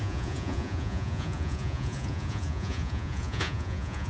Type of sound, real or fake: fake